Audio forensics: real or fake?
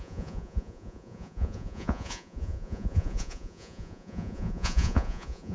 fake